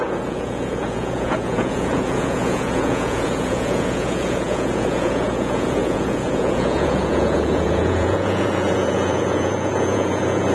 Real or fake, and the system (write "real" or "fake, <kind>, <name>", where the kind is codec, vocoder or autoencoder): fake, vocoder, Vocos